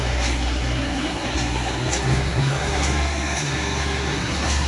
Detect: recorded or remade remade